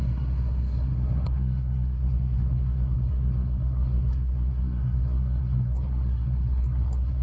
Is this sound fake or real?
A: fake